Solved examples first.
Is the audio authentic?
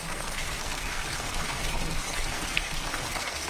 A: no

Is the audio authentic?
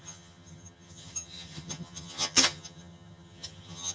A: no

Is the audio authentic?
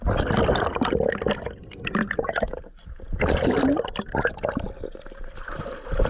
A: yes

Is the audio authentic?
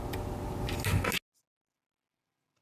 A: yes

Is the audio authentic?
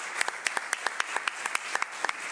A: yes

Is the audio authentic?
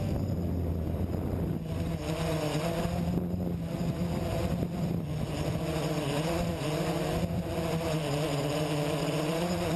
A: yes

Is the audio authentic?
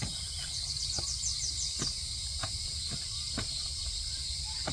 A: yes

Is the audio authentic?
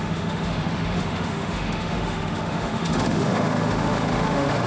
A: no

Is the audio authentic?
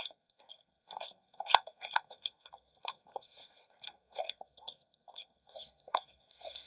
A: no